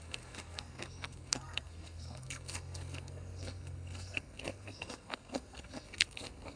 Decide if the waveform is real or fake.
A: fake